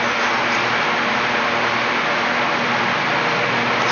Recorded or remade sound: recorded